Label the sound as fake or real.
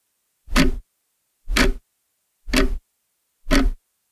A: real